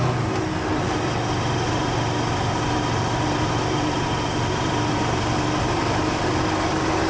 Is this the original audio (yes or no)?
yes